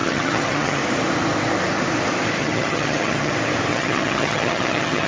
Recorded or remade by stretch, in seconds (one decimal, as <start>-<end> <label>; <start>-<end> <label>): 0.0-0.8 remade; 0.8-2.4 recorded; 2.4-3.3 remade; 3.3-3.7 recorded; 3.7-5.1 remade